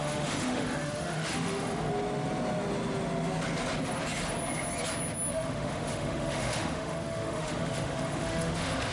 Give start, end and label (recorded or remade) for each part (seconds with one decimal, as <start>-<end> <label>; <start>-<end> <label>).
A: 0.0-1.9 remade; 1.9-5.3 recorded; 5.3-8.9 remade